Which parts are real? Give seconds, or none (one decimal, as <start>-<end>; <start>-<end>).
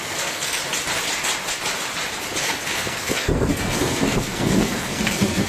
0.6-2.4